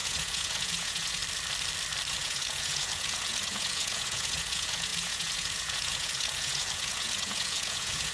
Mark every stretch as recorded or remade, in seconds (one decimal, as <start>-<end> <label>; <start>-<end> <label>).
0.0-1.2 remade; 1.2-2.1 recorded; 2.1-8.1 remade

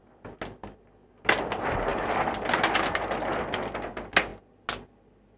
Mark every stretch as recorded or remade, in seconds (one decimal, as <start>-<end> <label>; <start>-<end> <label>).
0.0-5.4 recorded

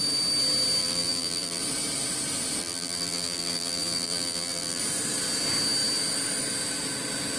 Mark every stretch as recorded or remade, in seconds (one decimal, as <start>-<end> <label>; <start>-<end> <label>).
0.0-0.8 recorded; 0.8-1.6 remade; 1.6-2.6 recorded; 2.6-4.8 remade; 4.8-7.4 recorded

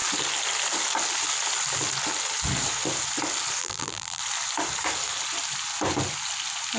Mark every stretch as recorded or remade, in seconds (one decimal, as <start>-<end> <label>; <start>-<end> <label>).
0.0-3.6 recorded; 3.6-4.2 remade; 4.2-6.8 recorded

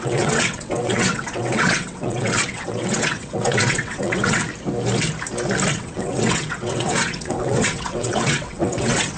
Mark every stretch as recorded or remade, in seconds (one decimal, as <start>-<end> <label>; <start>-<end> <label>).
0.0-4.4 remade; 4.4-5.7 recorded; 5.7-9.2 remade